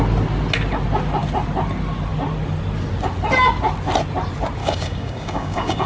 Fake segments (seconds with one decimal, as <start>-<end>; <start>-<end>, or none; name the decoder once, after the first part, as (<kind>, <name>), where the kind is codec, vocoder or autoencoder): 4.6-5.9 (codec, DAC)